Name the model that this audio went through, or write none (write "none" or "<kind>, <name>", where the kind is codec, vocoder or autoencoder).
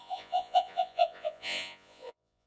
vocoder, Vocos